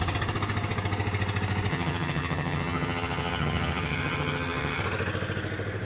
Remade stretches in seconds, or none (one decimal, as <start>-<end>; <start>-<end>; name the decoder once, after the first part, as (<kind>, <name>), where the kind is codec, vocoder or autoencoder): 1.7-4.8 (vocoder, HiFi-GAN)

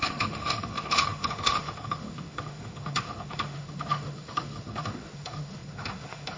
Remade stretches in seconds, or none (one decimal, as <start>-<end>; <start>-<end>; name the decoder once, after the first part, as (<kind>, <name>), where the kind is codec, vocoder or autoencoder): 0.0-6.4 (autoencoder, DAC-VAE)

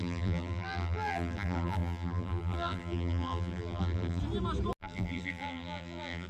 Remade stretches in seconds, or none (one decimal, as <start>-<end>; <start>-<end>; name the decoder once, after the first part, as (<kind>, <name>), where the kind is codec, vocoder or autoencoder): 0.0-4.2 (vocoder, BigVGAN v2); 4.8-6.3

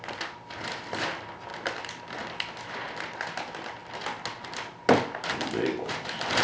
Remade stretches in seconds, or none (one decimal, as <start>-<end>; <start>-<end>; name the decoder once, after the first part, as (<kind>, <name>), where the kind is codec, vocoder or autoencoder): none

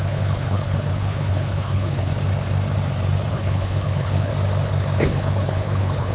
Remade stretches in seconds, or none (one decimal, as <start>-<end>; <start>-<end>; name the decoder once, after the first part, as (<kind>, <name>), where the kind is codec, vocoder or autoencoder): 0.0-2.1 (codec, HILCodec); 3.3-4.3; 5.0-6.1